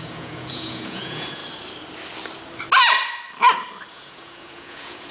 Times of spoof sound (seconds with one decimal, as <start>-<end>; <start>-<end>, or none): 0.0-1.4; 3.9-5.1

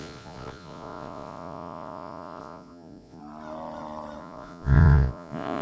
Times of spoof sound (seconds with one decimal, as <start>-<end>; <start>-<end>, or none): 0.0-3.2; 4.2-5.6

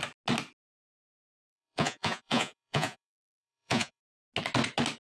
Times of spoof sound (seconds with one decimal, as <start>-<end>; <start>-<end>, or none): 0.9-4.0

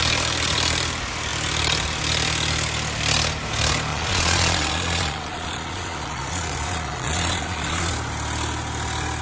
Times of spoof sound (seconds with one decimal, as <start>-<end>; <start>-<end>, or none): 3.9-7.9